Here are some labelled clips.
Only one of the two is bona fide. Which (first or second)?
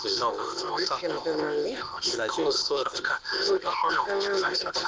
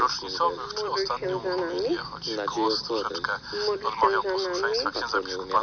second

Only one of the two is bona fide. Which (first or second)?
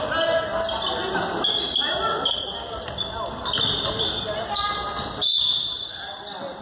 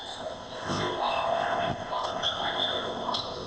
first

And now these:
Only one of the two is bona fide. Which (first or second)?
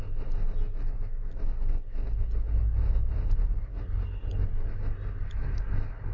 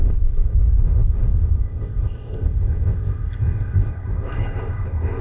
first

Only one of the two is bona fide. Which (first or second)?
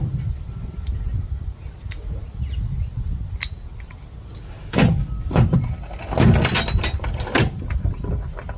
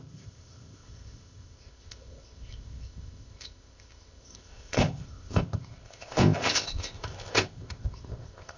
first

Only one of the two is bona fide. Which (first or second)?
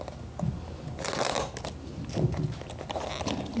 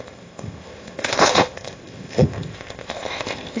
first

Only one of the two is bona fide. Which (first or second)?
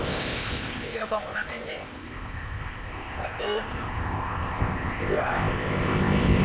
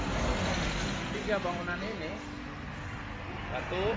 second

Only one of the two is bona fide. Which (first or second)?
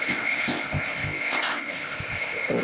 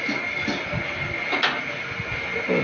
second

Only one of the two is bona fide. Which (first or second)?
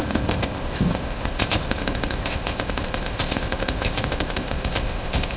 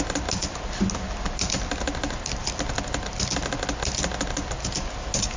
second